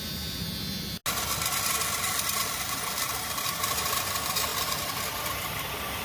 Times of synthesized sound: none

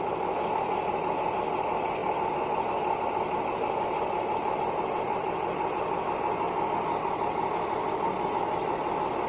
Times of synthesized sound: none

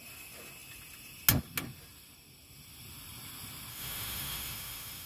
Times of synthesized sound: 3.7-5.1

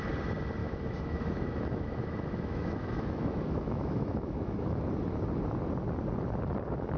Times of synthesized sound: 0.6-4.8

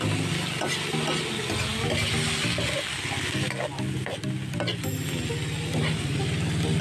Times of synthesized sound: none

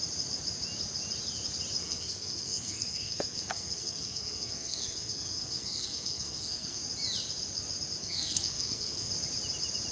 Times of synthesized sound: 1.8-6.8; 8.0-9.1